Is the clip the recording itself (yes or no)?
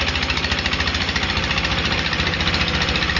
yes